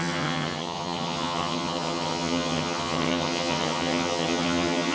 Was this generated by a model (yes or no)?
yes